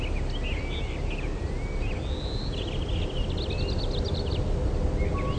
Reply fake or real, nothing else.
real